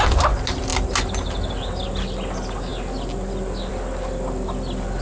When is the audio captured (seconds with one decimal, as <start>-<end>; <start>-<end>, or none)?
0.0-5.0